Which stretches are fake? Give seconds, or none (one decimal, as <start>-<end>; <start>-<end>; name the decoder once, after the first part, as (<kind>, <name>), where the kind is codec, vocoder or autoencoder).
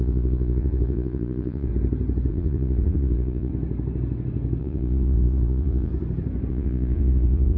0.0-1.7 (vocoder, Vocos); 2.3-3.5; 4.6-5.9; 6.5-7.6